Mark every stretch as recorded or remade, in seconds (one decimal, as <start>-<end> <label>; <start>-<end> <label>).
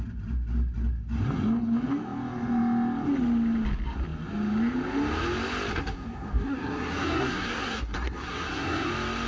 0.0-5.7 recorded; 5.7-8.9 remade; 8.9-9.3 recorded